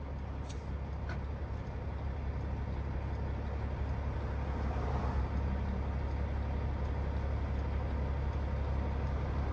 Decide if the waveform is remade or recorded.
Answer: recorded